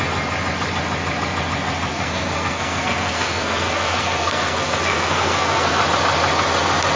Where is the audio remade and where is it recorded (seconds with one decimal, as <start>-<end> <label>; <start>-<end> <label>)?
0.0-1.9 recorded; 1.9-5.8 remade; 5.8-7.0 recorded